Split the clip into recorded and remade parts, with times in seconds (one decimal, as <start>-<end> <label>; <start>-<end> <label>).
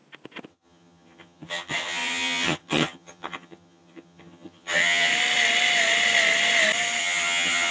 0.0-0.5 recorded; 0.5-5.1 remade; 5.1-7.0 recorded; 7.0-7.7 remade